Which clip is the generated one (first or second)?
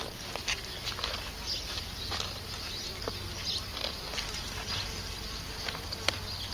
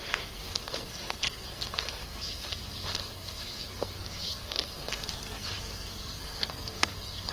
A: second